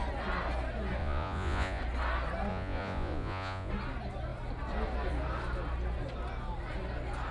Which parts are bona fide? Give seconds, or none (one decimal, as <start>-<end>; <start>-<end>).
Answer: 0.0-1.0; 1.8-2.5; 3.7-7.3